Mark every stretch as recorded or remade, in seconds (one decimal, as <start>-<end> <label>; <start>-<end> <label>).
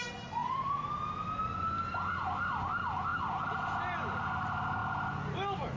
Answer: 0.0-0.4 recorded; 0.4-0.9 remade; 0.9-1.4 recorded; 1.4-2.2 remade; 2.2-3.1 recorded; 3.1-4.1 remade; 4.1-5.8 recorded